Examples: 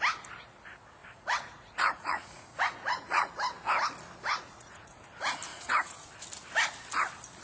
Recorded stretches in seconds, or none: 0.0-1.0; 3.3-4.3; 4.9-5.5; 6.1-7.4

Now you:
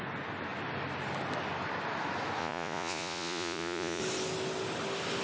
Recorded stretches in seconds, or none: 0.0-2.4; 4.0-5.2

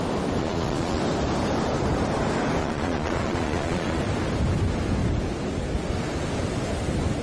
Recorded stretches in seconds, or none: 0.0-0.4; 1.0-2.6; 4.0-7.2

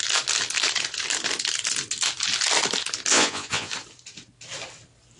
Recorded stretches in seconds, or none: 0.0-3.1; 3.7-5.2

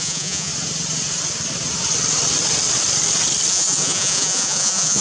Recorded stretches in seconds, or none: 0.5-3.5

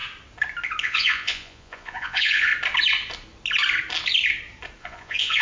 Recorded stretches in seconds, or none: 0.0-0.8; 2.5-4.8

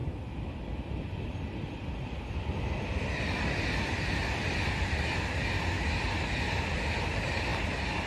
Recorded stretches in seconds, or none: 0.0-8.1

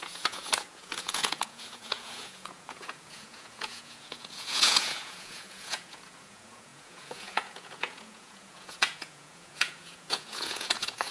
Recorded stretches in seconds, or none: none